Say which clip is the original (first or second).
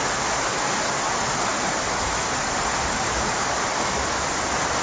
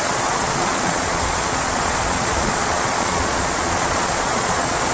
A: first